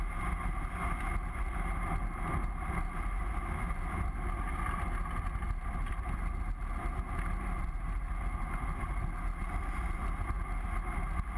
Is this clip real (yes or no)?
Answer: yes